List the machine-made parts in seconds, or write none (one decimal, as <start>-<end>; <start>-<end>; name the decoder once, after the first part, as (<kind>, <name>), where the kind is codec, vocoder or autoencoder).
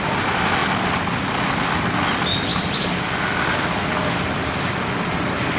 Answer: none